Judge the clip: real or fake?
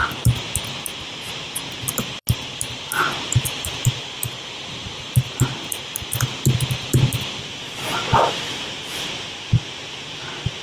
fake